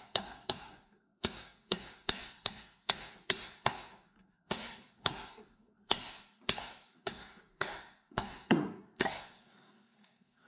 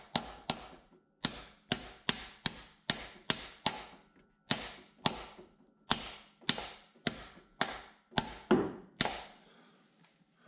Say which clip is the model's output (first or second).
first